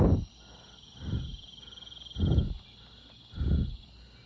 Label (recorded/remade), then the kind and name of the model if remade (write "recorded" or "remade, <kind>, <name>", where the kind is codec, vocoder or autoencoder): recorded